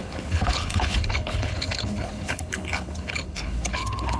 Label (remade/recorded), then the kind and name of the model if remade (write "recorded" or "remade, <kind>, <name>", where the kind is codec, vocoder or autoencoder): remade, codec, HILCodec